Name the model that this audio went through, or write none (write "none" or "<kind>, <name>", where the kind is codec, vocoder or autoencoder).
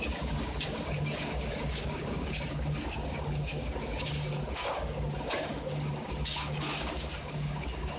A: codec, DAC